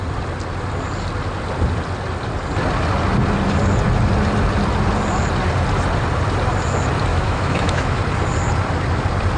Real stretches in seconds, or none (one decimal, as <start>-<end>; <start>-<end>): 0.0-7.1; 8.0-9.4